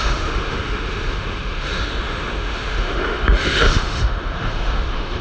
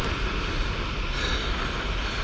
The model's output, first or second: first